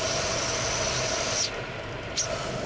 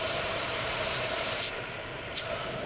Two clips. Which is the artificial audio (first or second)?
second